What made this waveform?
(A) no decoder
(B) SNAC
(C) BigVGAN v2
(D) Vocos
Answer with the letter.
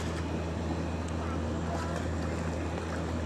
A